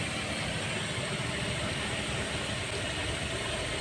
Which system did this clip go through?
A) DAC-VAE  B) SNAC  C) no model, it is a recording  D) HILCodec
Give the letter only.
C